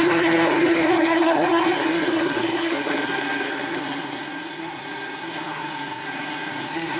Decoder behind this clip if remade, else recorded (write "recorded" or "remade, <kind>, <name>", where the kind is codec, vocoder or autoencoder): remade, codec, SNAC